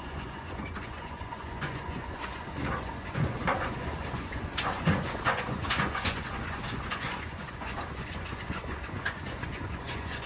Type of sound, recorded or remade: remade